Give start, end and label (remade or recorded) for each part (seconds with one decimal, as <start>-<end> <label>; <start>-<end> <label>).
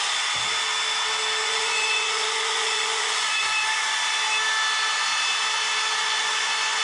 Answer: 0.0-1.4 recorded; 1.4-4.0 remade; 4.0-6.0 recorded; 6.0-6.8 remade